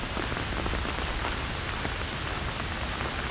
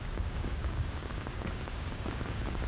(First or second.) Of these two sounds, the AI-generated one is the second